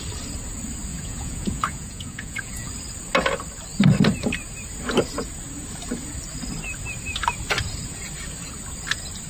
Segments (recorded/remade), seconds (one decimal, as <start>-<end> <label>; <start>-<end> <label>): 0.0-0.9 recorded; 0.9-2.7 remade; 2.7-9.3 recorded